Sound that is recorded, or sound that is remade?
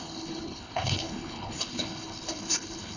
remade